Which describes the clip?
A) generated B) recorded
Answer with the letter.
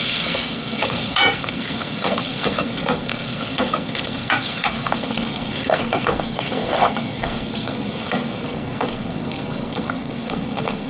A